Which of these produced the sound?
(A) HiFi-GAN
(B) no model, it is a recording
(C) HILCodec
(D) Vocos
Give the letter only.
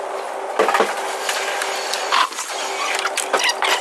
B